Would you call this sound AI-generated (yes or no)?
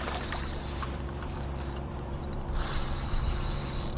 yes